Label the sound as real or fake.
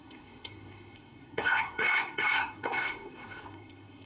fake